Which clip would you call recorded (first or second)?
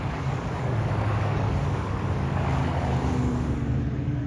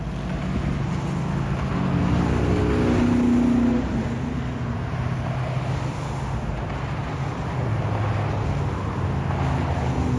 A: second